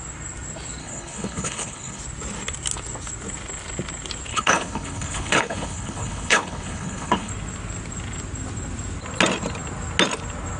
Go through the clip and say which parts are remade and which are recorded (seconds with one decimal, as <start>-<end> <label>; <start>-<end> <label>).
0.0-0.8 recorded; 0.8-2.0 remade; 2.0-4.3 recorded; 4.3-7.3 remade; 7.3-10.6 recorded